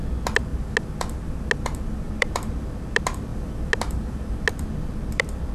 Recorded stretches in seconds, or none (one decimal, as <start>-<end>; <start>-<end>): 0.5-2.1; 3.3-4.5